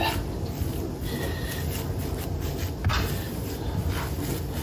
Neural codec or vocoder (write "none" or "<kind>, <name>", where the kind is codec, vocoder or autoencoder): none